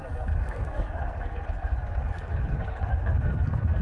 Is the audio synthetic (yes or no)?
yes